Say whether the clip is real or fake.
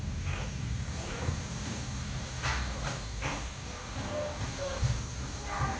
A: fake